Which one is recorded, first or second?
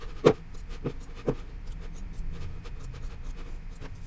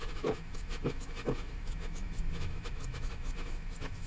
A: first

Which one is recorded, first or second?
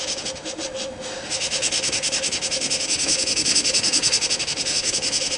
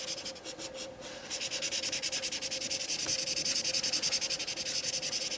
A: second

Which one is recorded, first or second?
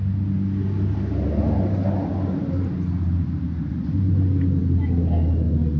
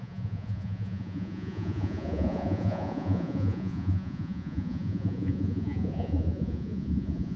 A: first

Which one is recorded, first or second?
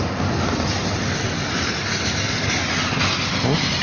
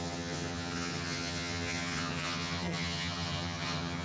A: first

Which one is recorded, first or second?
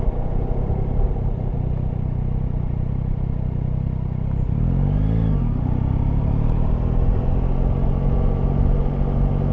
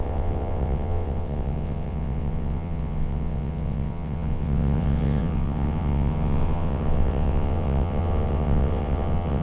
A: first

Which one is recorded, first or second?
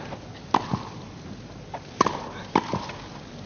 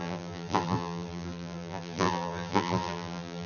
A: first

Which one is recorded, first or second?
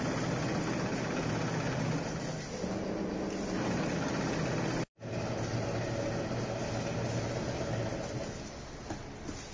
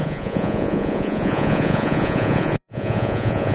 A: first